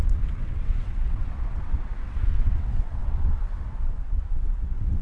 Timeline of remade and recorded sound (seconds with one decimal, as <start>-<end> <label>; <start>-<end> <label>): 0.0-5.0 remade